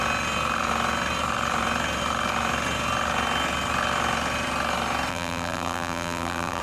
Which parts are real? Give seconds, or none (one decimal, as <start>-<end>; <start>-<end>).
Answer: 0.0-5.1